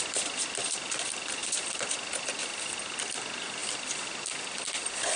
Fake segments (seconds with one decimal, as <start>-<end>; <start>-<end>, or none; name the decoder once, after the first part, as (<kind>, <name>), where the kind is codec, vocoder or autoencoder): 0.0-3.6 (vocoder, BigVGAN v2); 4.6-5.2